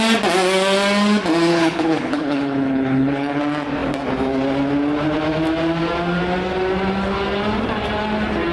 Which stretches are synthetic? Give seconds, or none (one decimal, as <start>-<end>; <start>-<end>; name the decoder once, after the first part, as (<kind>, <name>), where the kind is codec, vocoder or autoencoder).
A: 1.5-3.4 (codec, HILCodec)